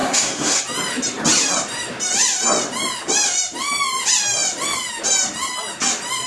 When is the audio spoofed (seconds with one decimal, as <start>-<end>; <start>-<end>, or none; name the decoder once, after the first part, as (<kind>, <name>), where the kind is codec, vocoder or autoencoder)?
0.0-0.6 (codec, SNAC)